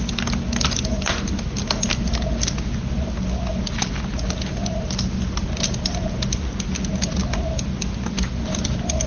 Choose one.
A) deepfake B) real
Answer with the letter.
B